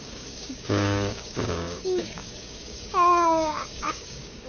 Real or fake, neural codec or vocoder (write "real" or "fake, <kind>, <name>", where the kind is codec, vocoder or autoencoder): fake, codec, DAC